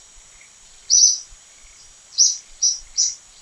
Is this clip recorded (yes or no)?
no